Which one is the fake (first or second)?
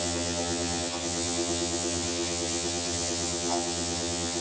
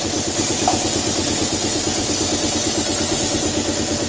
first